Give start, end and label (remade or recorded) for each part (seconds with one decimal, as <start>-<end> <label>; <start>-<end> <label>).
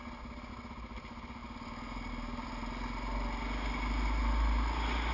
0.0-5.1 recorded